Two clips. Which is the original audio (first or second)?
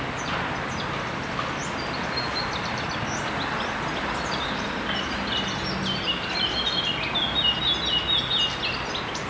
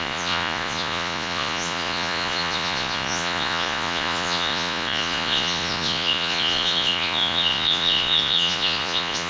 first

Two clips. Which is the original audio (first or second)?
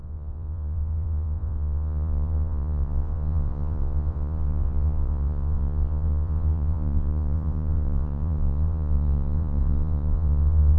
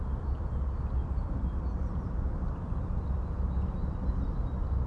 second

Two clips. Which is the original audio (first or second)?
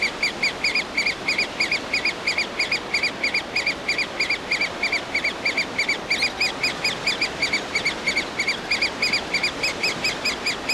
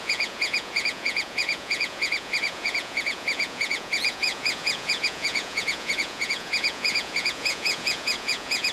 first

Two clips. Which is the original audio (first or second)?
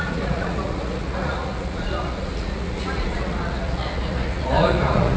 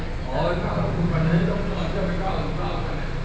second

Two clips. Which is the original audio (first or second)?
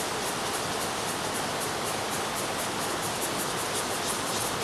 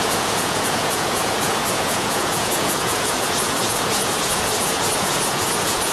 first